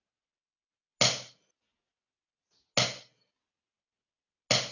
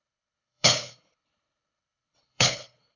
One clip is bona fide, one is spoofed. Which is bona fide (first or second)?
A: first